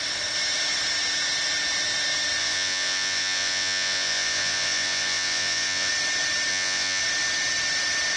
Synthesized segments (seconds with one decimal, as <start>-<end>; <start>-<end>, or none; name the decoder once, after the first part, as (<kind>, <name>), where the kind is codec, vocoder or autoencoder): 2.4-5.9 (vocoder, Vocos); 6.5-7.0